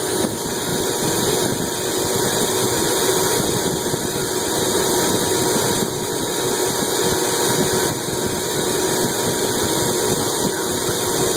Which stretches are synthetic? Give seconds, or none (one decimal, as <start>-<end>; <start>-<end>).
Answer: 0.0-6.6; 7.9-11.4